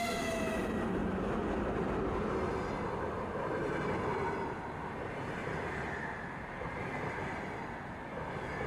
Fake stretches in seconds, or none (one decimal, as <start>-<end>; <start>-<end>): 5.4-6.9

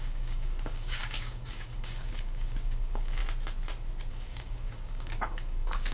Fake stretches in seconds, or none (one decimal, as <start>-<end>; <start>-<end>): 0.0-3.2; 4.1-5.9

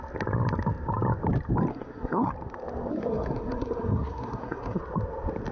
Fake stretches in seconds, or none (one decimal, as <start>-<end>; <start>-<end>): 1.7-2.3; 2.9-4.8